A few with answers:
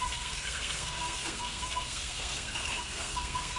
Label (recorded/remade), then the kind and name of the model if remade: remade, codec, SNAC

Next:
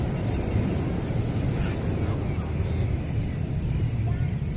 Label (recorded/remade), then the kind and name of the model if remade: recorded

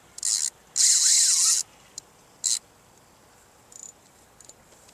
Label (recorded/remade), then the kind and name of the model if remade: recorded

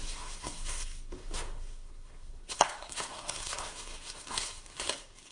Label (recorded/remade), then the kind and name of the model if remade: remade, codec, SNAC